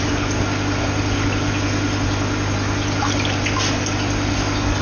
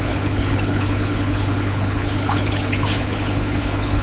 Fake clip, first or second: second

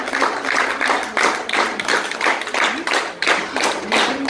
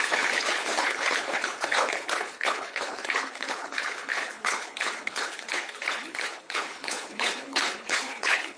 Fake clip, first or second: second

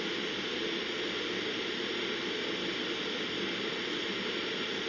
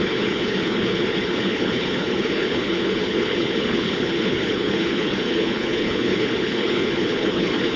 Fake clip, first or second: second